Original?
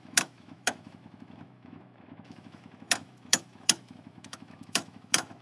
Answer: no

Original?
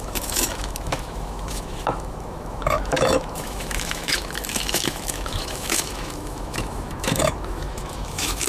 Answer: no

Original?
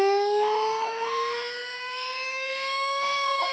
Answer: no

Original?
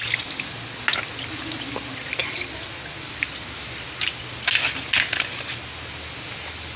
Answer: yes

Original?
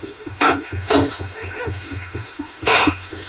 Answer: no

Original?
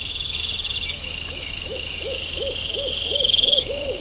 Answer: no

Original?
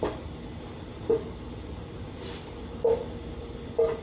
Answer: yes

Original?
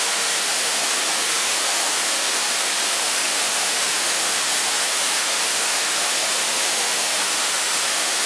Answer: no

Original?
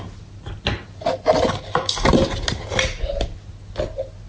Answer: yes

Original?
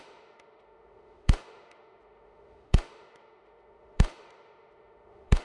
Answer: no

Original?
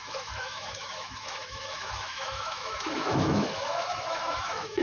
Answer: no